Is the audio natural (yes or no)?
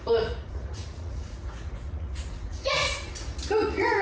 no